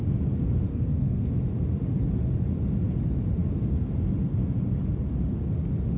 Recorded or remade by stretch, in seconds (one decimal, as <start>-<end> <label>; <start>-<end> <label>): 0.0-0.7 recorded; 0.7-1.3 remade; 1.3-6.0 recorded